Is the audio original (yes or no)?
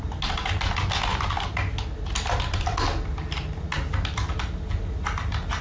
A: yes